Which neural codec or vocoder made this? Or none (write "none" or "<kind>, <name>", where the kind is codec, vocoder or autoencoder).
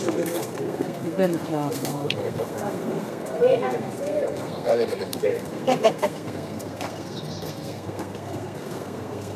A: codec, SNAC